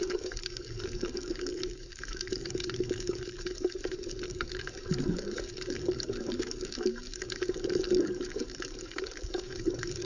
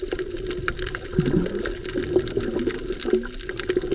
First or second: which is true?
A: second